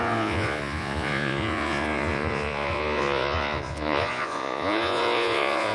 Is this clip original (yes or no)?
no